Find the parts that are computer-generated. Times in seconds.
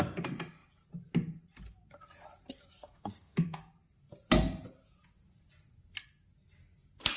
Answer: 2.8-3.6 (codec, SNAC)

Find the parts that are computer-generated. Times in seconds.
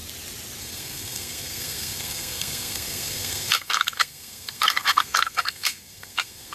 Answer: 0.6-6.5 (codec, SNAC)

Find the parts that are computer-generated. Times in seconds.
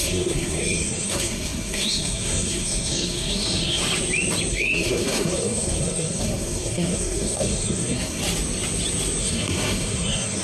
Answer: 0.0-3.8 (codec, SNAC); 4.5-8.2; 9.2-10.4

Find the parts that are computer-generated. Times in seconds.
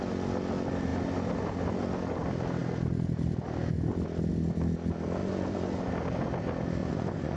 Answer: 5.2-5.9 (vocoder, Vocos); 6.8-7.4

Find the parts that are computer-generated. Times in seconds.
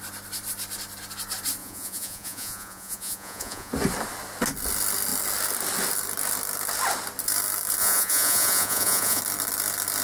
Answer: 1.6-3.7 (vocoder, Vocos); 7.8-9.2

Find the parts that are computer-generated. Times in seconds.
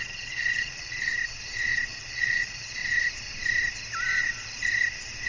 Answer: 0.0-1.1 (vocoder, Vocos); 1.9-2.8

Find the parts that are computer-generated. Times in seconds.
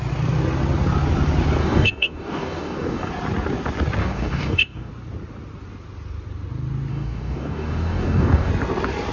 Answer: 1.6-3.1 (codec, DAC); 4.0-4.9; 6.9-8.5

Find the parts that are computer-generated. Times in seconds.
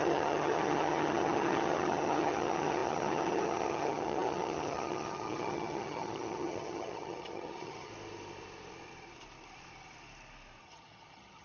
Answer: 0.0-7.9 (vocoder, HiFi-GAN); 10.6-11.4